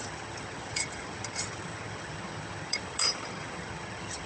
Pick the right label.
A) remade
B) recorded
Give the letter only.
A